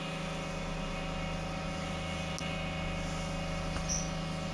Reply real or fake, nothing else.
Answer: real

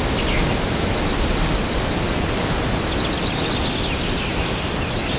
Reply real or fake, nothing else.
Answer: real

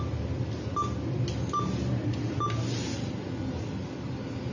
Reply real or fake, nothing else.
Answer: real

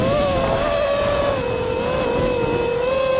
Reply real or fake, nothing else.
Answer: real